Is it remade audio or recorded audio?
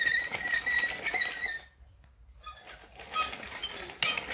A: recorded